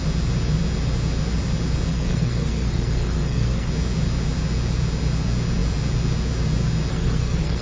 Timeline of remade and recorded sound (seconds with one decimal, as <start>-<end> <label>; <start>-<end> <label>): 0.0-1.9 recorded; 1.9-3.7 remade; 3.7-6.9 recorded; 6.9-7.6 remade